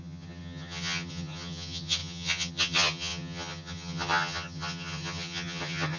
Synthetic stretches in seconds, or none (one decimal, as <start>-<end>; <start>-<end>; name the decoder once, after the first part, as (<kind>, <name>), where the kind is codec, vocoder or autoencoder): 0.0-6.0 (vocoder, HiFi-GAN)